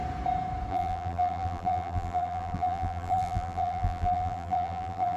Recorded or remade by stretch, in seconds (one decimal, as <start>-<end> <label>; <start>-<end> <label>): 0.0-0.7 recorded; 0.7-5.2 remade